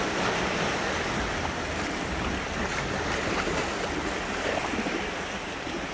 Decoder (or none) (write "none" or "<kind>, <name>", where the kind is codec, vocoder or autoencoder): none